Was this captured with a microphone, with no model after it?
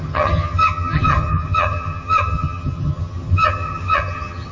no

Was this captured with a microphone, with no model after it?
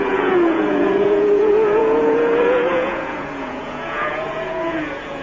no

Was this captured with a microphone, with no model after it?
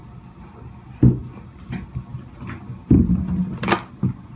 yes